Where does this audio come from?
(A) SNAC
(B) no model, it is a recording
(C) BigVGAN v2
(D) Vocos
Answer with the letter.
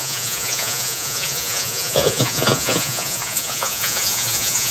D